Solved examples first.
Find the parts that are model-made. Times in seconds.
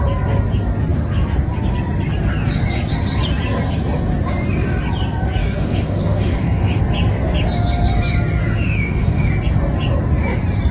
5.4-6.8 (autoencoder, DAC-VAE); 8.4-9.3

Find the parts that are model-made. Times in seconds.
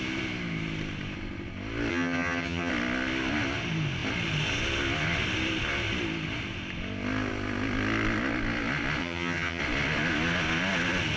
1.9-2.7 (vocoder, HiFi-GAN); 9.0-9.6